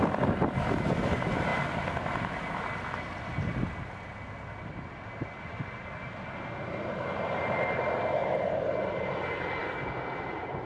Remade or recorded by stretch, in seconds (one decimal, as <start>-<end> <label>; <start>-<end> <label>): 0.0-10.7 recorded